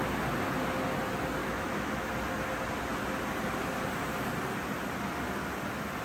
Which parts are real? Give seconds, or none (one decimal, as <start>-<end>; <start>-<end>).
0.0-1.4; 2.1-6.0